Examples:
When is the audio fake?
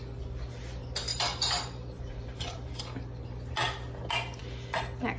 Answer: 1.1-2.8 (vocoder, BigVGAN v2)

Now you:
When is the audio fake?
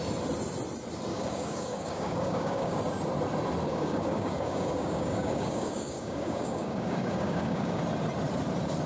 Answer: 1.1-2.8 (codec, DAC); 3.7-7.8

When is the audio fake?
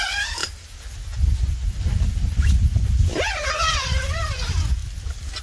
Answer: none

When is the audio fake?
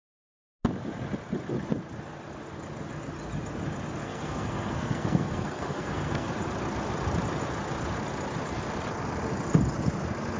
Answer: 4.0-6.3 (codec, SNAC)